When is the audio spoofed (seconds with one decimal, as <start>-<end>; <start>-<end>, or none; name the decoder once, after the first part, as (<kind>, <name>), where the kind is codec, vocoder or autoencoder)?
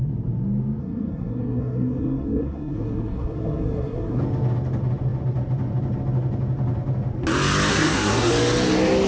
0.8-4.2 (codec, SNAC); 7.7-8.3